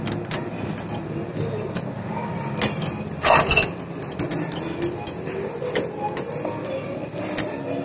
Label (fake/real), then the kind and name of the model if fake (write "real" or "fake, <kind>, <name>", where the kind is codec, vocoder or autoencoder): real